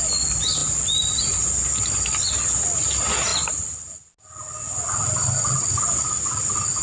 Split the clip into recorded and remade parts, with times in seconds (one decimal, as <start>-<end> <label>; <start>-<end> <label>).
0.0-6.8 recorded